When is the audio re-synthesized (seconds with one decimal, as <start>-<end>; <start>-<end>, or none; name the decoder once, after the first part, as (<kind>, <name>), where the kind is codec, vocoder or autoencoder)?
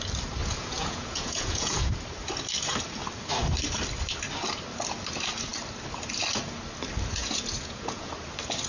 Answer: 0.4-1.9 (vocoder, Vocos); 7.2-8.1